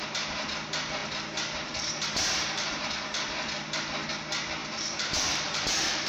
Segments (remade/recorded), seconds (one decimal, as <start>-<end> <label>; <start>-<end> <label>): 0.0-4.6 recorded; 4.6-6.1 remade